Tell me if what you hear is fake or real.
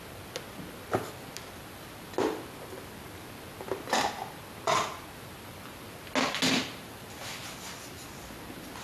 real